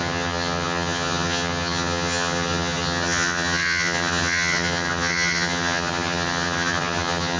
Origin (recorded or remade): remade